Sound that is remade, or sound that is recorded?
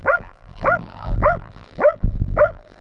remade